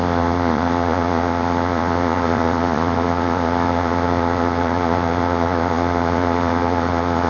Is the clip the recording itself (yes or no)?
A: no